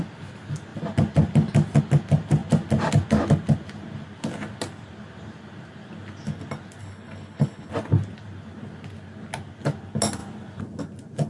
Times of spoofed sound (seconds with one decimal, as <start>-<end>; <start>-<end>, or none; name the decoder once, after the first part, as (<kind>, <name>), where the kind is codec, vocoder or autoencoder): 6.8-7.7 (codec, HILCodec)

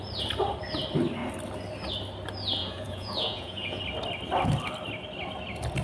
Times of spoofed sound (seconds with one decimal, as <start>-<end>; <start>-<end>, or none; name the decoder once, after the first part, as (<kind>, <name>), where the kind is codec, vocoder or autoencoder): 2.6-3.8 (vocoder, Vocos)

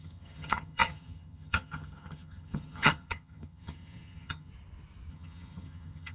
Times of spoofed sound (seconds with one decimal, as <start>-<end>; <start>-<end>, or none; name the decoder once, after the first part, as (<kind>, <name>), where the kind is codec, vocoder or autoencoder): 0.0-4.5 (vocoder, HiFi-GAN); 5.1-6.1

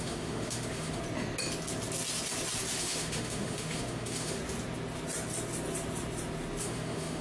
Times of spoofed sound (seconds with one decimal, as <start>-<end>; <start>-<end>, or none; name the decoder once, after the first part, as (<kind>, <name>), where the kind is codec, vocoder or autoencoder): 0.0-1.0 (autoencoder, DAC-VAE); 2.8-4.4; 6.6-7.2

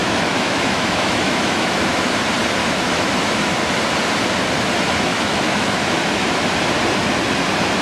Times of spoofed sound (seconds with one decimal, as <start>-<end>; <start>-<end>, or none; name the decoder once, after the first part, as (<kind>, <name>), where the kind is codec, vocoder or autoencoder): 0.0-2.1 (autoencoder, DAC-VAE); 2.6-3.1; 5.1-6.4